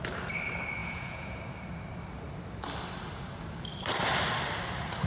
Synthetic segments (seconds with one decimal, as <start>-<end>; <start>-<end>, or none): 0.8-1.4